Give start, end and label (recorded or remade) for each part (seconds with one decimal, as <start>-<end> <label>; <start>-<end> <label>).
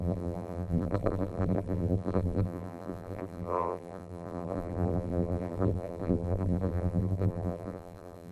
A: 0.0-8.3 remade